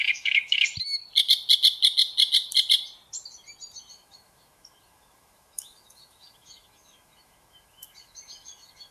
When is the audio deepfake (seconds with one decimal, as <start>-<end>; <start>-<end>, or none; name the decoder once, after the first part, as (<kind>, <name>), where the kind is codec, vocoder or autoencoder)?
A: 0.0-0.7 (autoencoder, DAC-VAE); 3.9-8.9